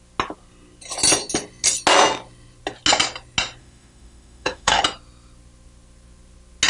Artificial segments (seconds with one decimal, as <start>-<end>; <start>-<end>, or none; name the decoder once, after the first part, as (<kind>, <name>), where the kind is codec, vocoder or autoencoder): 3.6-4.8 (autoencoder, DAC-VAE)

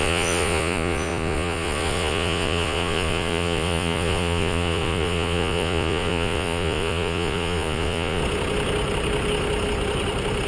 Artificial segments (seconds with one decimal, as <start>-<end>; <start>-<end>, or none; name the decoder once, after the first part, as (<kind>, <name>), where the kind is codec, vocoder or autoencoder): 0.0-8.2 (vocoder, Vocos)

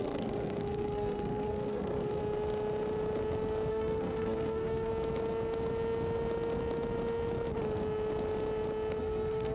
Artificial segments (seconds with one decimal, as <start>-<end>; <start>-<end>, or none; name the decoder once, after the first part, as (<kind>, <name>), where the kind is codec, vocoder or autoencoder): 0.0-2.2 (codec, SNAC); 3.7-4.9; 9.0-9.5

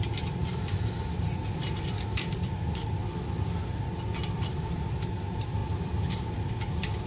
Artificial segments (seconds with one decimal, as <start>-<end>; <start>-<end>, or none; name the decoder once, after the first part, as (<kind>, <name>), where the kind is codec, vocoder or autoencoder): 0.0-3.0 (vocoder, BigVGAN v2); 4.2-7.1

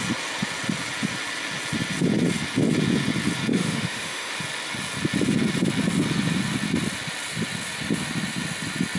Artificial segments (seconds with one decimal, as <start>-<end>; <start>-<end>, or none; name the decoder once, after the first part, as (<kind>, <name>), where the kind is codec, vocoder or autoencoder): 3.5-4.3 (autoencoder, DAC-VAE)